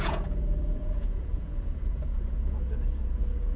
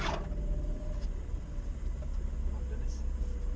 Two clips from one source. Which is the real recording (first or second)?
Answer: second